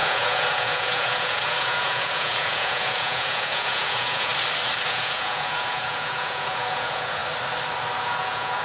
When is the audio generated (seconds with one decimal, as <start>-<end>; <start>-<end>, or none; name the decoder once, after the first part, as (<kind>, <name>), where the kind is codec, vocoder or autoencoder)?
0.0-4.3 (vocoder, Vocos); 4.9-7.2; 8.0-8.6